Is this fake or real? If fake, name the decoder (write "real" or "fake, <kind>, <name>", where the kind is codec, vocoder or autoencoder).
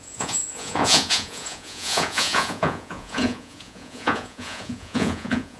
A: fake, vocoder, Vocos